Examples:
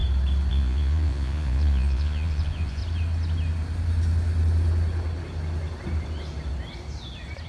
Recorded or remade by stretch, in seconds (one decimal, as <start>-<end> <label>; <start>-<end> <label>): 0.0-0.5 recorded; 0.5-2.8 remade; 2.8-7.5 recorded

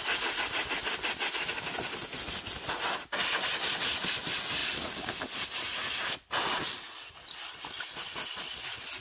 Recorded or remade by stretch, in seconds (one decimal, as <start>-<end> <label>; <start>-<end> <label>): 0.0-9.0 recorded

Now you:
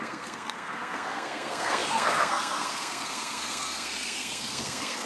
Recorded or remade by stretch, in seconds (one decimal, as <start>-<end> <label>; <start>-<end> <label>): 0.0-5.1 remade